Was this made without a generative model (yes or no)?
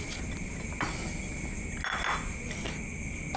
yes